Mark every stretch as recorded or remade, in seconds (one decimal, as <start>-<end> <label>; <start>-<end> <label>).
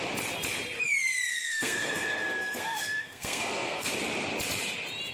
0.0-1.3 recorded; 1.3-3.9 remade; 3.9-5.1 recorded